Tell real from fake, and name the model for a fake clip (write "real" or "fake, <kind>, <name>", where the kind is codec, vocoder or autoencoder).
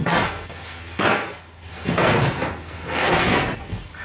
fake, codec, SNAC